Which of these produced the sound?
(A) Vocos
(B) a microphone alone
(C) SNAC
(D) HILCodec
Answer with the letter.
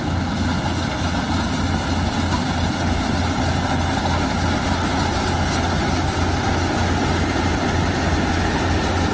B